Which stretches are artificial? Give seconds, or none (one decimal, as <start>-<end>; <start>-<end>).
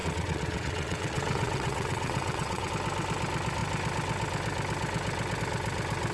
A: 0.0-2.7